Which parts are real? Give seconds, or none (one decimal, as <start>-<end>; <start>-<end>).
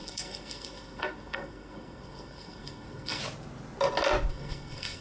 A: 3.2-4.3